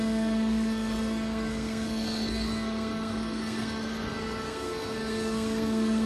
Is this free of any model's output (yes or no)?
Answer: no